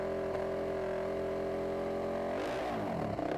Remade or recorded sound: recorded